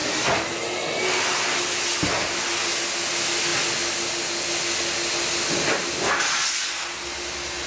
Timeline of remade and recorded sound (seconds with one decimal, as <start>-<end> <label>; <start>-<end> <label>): 0.0-7.7 recorded